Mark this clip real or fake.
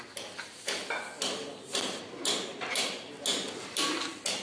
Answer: real